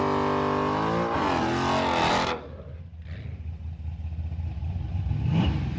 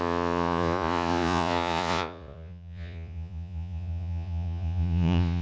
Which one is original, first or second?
first